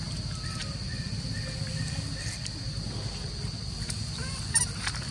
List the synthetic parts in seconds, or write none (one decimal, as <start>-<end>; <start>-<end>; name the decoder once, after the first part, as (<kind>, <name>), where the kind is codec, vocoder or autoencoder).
none